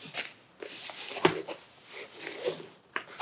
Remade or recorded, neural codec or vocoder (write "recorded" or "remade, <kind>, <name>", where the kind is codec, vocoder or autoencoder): recorded